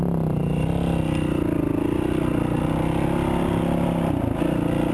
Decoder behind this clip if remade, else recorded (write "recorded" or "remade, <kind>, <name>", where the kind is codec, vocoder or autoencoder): recorded